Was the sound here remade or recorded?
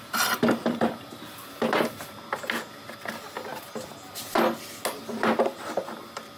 recorded